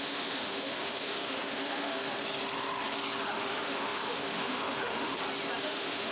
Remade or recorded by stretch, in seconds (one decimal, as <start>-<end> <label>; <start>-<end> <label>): 0.0-2.1 remade; 2.1-3.3 recorded; 3.3-5.1 remade; 5.1-5.6 recorded; 5.6-6.1 remade